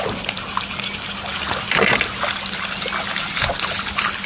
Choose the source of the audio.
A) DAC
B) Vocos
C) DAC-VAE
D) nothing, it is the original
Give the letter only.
D